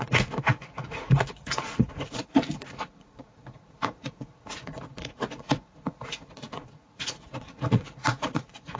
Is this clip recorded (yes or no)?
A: no